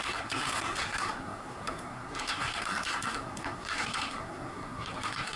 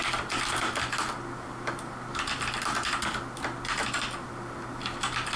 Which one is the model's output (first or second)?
first